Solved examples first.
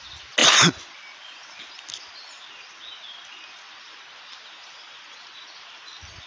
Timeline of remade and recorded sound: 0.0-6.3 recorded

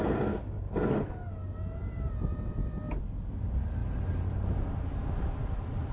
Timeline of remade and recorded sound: 0.0-1.8 recorded; 1.8-2.9 remade; 2.9-5.9 recorded

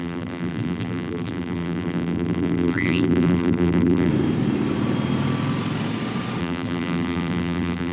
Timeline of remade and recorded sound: 0.0-4.1 remade; 4.1-6.4 recorded; 6.4-7.9 remade

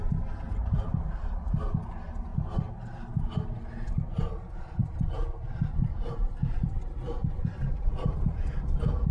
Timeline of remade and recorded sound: 0.0-0.6 recorded; 0.6-1.5 remade; 1.5-4.8 recorded; 4.8-8.4 remade; 8.4-9.1 recorded

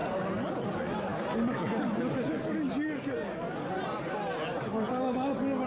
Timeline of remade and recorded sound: 0.0-0.5 remade; 0.5-5.7 recorded